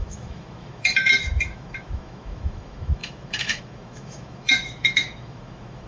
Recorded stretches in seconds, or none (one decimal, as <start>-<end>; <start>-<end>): none